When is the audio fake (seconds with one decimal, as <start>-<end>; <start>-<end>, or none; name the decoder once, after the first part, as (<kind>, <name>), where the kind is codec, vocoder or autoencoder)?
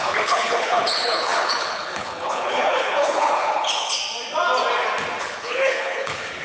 0.0-4.0 (codec, HILCodec); 5.2-6.4